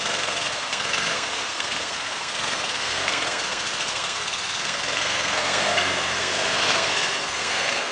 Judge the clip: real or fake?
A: fake